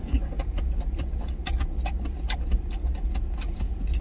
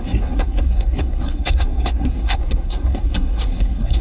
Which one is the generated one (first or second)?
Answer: second